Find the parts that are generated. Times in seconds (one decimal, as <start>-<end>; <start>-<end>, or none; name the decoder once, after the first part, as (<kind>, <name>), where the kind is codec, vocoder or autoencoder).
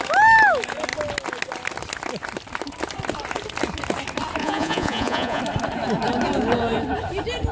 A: 4.4-5.4 (vocoder, Vocos)